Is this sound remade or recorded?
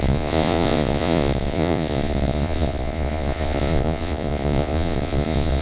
remade